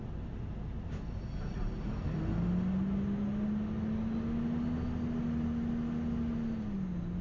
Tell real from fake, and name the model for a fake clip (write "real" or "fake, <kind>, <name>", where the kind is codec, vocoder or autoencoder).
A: real